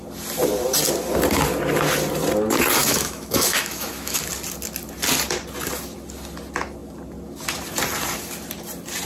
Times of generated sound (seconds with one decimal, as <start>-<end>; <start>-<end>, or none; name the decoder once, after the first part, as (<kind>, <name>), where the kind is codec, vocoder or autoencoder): 2.8-4.2 (autoencoder, DAC-VAE)